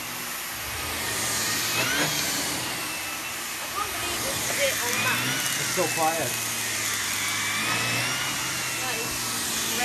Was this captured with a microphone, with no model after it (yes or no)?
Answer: yes